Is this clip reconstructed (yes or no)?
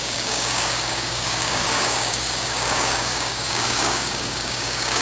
yes